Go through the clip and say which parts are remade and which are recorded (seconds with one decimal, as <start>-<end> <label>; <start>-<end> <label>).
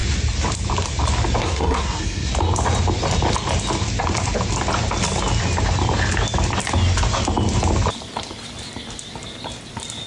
0.0-1.4 recorded; 1.4-2.3 remade; 2.3-10.1 recorded